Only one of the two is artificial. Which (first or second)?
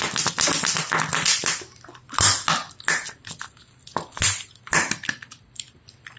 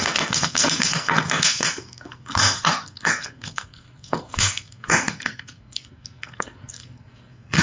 second